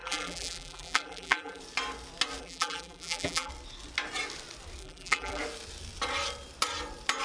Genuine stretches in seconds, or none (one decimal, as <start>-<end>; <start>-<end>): 1.6-2.4; 3.5-4.8; 5.4-7.2